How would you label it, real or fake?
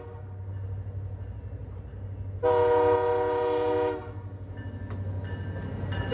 real